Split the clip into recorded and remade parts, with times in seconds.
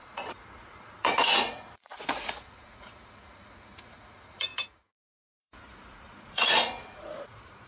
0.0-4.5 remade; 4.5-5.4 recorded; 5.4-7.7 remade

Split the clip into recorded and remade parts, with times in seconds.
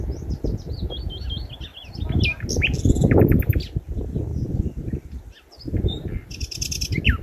0.0-7.2 recorded